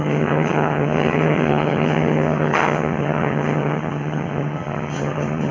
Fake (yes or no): yes